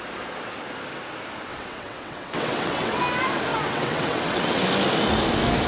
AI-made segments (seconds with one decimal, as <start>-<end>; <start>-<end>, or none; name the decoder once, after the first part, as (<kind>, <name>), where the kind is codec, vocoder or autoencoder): 1.5-3.0 (vocoder, WaveNeXt); 3.5-4.6